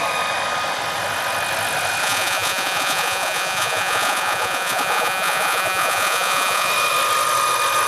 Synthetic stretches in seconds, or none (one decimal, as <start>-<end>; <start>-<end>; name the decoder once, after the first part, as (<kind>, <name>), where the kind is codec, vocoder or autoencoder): 2.0-6.7 (vocoder, Vocos)

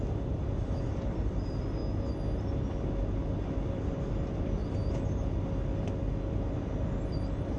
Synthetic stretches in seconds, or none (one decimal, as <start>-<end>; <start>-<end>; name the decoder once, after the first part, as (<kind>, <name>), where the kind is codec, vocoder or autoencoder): 0.0-1.8 (vocoder, BigVGAN v2); 3.7-4.6; 6.6-7.6

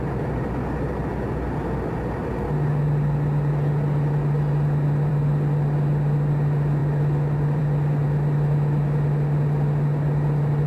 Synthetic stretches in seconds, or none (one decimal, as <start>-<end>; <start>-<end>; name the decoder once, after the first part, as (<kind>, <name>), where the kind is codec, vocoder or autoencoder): none

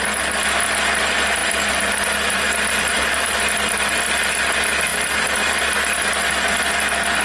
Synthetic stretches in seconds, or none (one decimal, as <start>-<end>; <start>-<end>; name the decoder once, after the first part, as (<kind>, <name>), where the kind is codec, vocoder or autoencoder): 1.4-2.5 (vocoder, BigVGAN v2); 2.9-3.4; 4.9-6.1

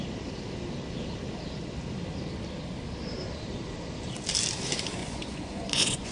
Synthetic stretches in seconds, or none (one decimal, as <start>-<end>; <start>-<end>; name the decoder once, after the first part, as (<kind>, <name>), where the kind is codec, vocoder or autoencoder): 5.0-6.1 (vocoder, Vocos)

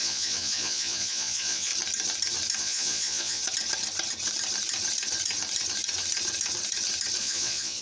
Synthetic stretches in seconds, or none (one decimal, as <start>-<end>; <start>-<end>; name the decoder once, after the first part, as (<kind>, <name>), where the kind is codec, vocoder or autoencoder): 0.0-1.7 (vocoder, Vocos); 2.6-3.4; 7.2-7.8